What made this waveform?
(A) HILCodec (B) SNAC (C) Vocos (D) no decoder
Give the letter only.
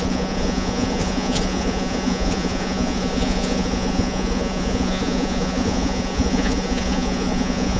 C